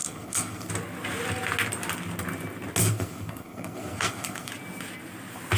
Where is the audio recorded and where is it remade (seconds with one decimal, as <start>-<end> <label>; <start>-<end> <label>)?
0.0-0.7 remade; 0.7-2.8 recorded; 2.8-4.5 remade; 4.5-5.6 recorded